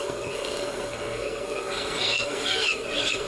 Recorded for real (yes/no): no